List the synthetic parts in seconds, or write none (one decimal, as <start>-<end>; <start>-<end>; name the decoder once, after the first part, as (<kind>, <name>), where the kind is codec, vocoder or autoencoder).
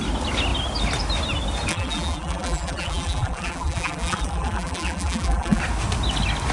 1.7-5.6 (vocoder, BigVGAN v2)